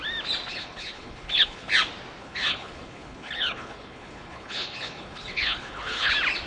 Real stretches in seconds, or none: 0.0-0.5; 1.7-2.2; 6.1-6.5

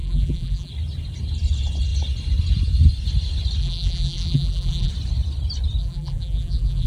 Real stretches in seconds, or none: 0.7-3.6; 4.9-5.8

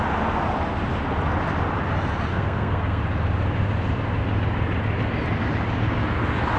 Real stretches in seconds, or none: 0.0-2.3; 3.0-6.6

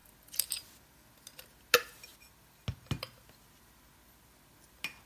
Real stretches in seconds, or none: 0.0-5.1